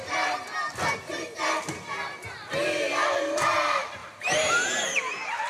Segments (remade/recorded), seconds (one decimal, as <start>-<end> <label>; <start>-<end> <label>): 0.0-0.4 remade; 0.4-2.1 recorded; 2.1-4.0 remade; 4.0-5.1 recorded; 5.1-5.5 remade